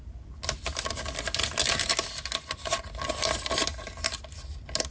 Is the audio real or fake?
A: real